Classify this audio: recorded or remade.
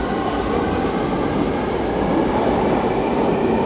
recorded